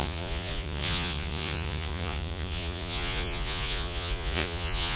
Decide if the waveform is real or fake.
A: fake